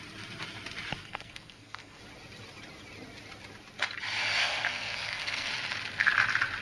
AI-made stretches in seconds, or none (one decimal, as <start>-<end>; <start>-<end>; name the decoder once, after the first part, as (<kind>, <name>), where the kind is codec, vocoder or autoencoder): 1.0-2.0 (codec, SNAC); 4.4-5.5